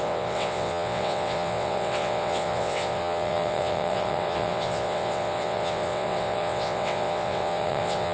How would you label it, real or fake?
fake